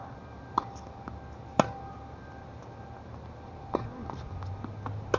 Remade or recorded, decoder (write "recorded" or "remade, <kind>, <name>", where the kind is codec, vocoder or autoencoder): recorded